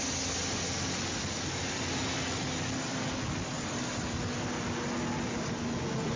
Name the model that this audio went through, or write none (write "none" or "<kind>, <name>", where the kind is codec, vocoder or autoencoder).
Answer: none